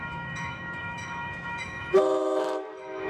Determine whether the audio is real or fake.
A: fake